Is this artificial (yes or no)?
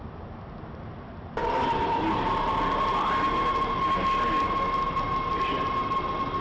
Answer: no